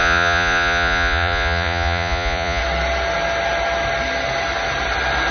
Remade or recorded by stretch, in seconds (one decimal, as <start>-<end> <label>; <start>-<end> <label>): 0.0-2.6 remade; 2.6-5.3 recorded